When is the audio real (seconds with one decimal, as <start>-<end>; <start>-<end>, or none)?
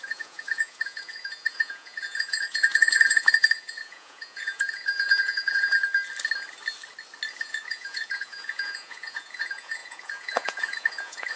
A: 5.8-7.4